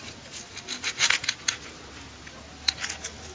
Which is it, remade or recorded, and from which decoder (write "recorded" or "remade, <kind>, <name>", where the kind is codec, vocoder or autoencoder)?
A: recorded